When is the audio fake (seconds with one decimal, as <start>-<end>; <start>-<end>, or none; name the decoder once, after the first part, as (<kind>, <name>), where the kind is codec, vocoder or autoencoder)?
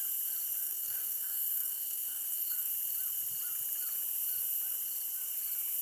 0.6-2.7 (codec, SNAC)